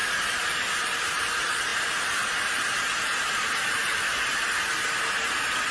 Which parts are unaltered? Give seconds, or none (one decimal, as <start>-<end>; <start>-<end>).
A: 0.0-5.7